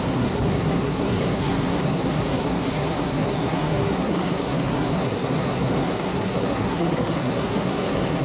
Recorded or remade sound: remade